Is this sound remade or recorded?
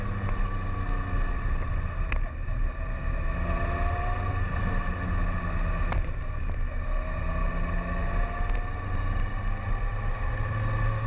recorded